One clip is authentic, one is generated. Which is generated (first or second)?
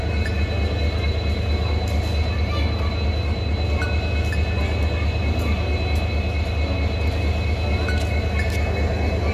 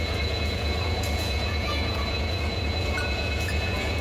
second